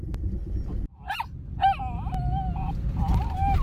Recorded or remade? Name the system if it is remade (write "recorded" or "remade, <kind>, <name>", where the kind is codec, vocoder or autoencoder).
recorded